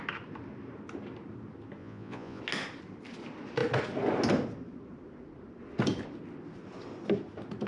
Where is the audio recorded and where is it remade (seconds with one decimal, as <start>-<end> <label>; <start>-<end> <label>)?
0.0-1.8 recorded; 1.8-2.4 remade; 2.4-7.7 recorded